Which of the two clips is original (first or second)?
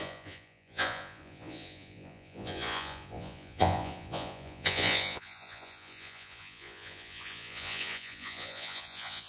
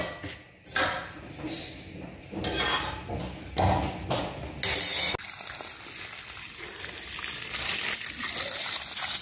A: second